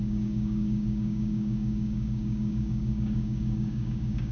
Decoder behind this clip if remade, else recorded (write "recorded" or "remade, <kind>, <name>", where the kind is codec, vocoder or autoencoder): remade, codec, DAC